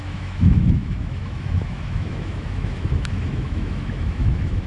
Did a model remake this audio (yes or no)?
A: yes